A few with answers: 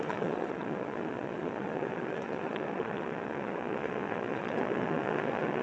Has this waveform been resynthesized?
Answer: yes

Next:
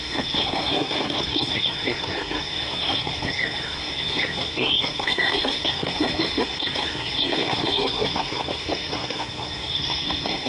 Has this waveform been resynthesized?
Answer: yes